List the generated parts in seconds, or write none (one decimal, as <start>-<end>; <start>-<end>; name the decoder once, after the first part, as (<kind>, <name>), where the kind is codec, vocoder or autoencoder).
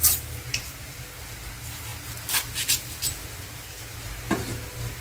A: none